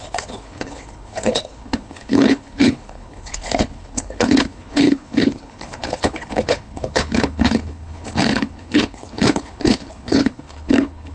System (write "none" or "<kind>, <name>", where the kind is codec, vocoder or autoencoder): codec, HILCodec